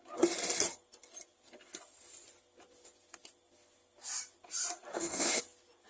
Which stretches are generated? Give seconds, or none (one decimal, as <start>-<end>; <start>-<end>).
4.9-5.4